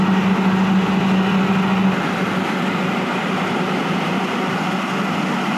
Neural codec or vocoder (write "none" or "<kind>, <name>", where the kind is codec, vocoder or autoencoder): none